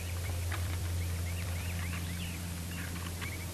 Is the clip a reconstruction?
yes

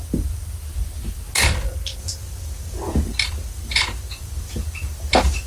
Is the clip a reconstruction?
no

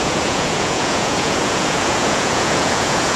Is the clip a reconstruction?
yes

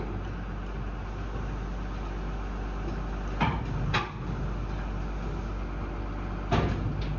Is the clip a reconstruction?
no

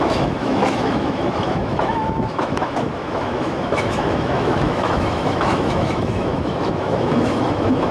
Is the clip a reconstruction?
yes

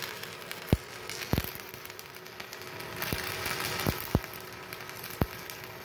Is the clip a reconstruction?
no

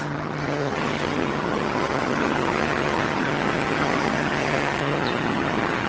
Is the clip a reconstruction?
yes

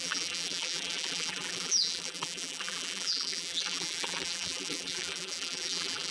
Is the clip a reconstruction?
yes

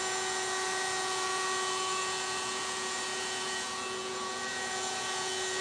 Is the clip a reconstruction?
yes